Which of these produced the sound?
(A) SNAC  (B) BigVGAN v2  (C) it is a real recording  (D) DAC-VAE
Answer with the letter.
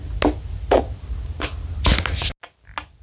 C